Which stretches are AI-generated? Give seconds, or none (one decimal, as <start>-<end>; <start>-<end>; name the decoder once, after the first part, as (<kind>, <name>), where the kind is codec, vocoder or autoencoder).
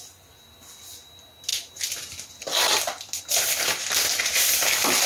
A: none